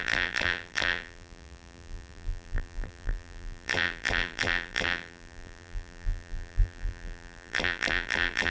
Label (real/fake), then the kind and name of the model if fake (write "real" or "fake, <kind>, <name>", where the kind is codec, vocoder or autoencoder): fake, vocoder, BigVGAN v2